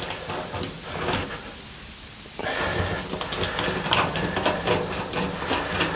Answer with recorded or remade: recorded